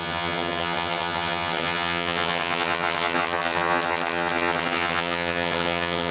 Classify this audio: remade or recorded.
remade